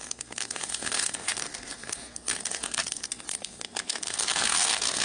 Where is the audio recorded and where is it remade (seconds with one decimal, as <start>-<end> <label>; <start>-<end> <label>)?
0.0-5.0 remade